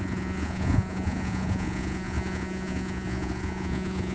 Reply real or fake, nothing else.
fake